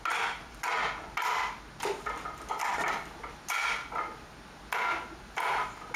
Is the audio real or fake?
real